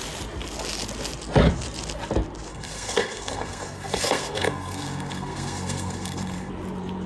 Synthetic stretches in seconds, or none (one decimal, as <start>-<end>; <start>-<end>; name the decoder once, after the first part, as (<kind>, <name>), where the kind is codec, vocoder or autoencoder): 2.5-6.5 (codec, SNAC)